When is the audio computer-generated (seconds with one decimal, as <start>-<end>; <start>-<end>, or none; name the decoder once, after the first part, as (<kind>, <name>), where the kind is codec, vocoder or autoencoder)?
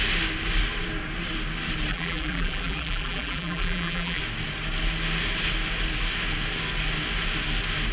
1.9-4.2 (vocoder, BigVGAN v2)